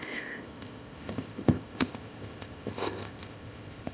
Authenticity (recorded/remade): remade